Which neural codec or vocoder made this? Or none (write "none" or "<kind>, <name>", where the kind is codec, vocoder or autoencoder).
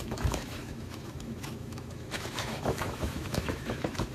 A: autoencoder, DAC-VAE